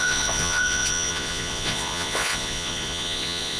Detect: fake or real fake